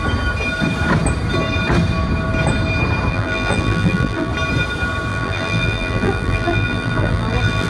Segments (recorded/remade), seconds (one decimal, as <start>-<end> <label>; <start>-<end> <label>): 0.0-3.1 recorded; 3.1-4.3 remade; 4.3-5.1 recorded; 5.1-7.7 remade